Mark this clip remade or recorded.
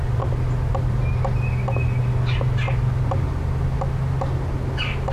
recorded